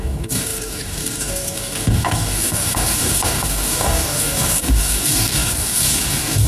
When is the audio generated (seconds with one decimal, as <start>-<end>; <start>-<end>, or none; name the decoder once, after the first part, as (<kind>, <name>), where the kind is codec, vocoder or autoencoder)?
0.0-6.5 (codec, DAC)